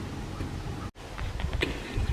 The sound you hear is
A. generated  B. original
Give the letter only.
B